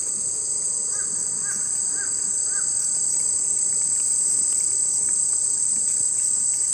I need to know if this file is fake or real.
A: real